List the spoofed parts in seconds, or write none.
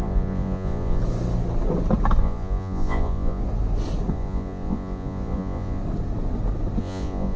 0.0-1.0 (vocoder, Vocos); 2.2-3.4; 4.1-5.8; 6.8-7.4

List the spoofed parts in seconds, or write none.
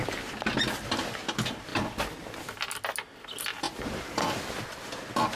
none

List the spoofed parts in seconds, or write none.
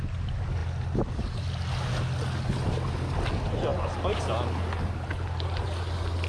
none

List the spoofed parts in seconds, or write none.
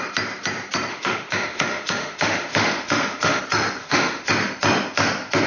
0.9-3.4 (autoencoder, DAC-VAE); 3.8-4.3